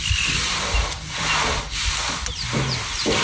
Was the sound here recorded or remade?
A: recorded